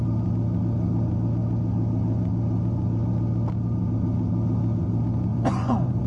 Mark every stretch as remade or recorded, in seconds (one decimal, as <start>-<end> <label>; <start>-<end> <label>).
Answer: 0.0-5.3 recorded; 5.3-6.1 remade

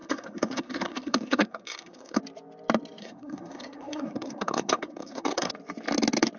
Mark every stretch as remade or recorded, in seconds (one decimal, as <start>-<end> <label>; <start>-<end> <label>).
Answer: 0.0-2.2 remade; 2.2-3.0 recorded; 3.0-5.5 remade; 5.5-6.4 recorded

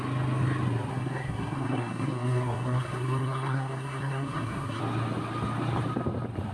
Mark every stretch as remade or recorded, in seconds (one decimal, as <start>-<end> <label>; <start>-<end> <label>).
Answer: 0.0-0.9 recorded; 0.9-4.8 remade; 4.8-6.5 recorded